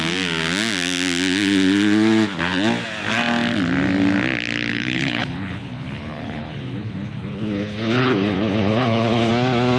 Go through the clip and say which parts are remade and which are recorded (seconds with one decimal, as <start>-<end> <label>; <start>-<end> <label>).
0.0-4.7 recorded; 4.7-9.3 remade; 9.3-9.8 recorded